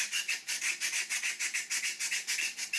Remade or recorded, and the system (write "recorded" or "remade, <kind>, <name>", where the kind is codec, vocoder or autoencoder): recorded